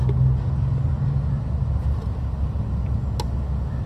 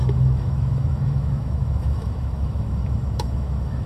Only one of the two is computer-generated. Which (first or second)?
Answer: second